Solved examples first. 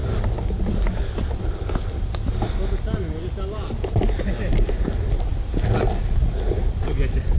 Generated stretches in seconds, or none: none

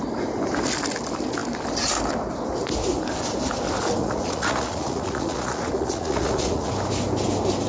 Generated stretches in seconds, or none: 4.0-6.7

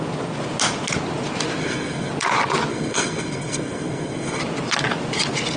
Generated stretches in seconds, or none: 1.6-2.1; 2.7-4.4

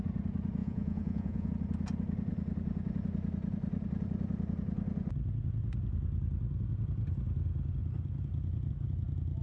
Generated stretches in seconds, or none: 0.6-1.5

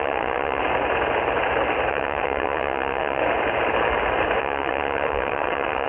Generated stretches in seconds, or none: 0.0-0.6; 1.9-3.2; 4.4-5.9

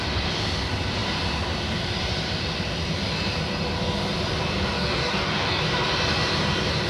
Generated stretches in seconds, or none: 4.8-5.6